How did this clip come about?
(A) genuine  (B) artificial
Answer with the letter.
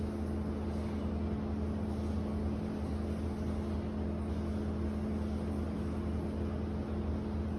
A